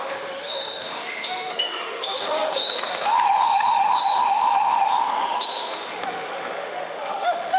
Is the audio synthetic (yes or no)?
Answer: yes